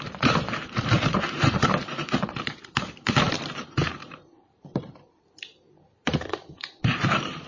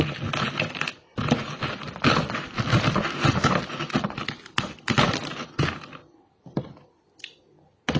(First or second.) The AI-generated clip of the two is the first